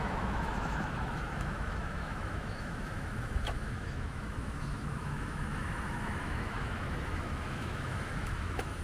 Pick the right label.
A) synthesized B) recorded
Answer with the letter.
A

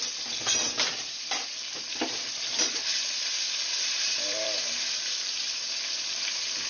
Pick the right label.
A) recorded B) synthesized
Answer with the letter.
B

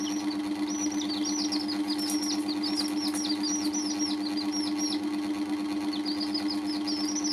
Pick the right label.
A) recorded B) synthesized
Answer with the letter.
A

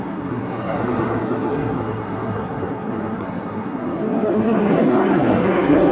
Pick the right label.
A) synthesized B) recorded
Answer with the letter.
A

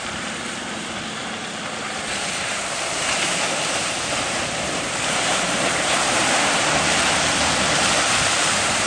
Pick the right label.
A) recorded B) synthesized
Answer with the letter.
B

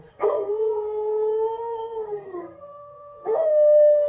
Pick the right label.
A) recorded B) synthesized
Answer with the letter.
B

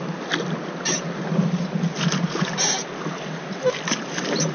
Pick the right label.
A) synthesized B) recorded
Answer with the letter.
B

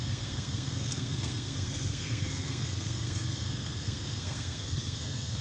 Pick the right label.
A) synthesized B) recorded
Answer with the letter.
A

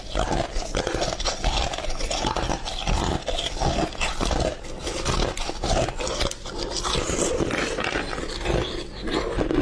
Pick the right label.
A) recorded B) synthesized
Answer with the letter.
A